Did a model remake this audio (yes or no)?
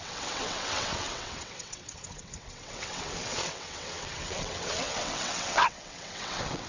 yes